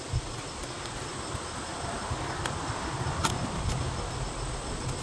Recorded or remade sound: recorded